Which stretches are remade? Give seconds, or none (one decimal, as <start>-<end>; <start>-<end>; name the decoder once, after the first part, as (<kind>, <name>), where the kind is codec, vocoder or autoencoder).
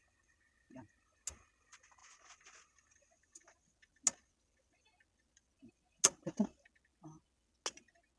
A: none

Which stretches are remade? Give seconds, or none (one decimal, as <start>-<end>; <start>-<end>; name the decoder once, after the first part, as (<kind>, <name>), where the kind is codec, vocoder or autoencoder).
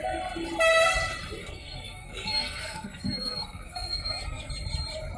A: 1.4-4.5 (codec, SNAC)